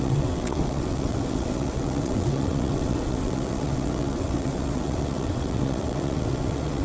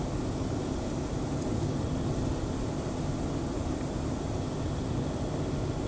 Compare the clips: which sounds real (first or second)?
second